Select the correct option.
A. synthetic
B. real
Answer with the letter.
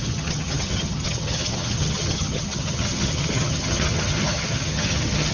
A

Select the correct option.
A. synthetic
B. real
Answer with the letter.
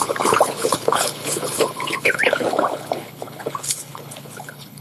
A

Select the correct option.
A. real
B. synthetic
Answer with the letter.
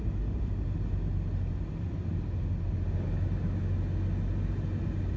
A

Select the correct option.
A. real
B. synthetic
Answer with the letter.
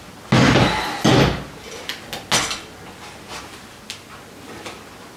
A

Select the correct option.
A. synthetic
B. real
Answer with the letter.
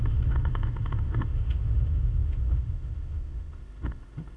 A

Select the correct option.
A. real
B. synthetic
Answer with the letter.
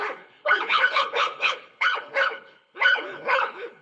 B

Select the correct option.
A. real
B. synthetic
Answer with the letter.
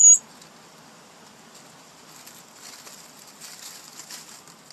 A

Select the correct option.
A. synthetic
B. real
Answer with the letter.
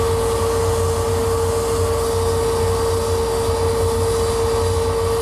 B